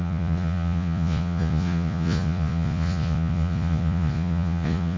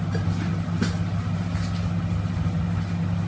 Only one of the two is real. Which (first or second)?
second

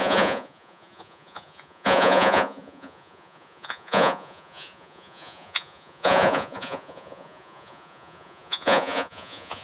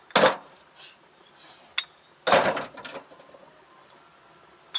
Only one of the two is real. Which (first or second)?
second